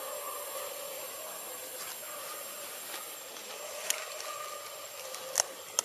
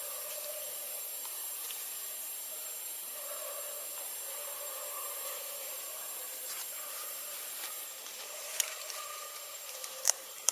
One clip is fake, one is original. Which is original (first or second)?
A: first